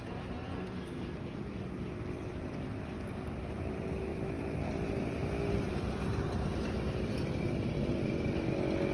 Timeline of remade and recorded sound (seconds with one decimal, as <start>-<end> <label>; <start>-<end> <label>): 0.0-4.1 recorded; 4.1-4.7 remade; 4.7-8.9 recorded